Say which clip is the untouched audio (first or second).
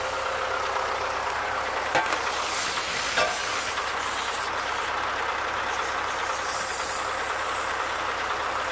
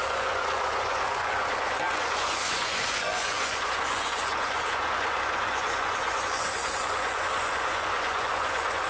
first